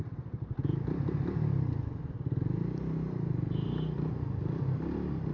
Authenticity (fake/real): real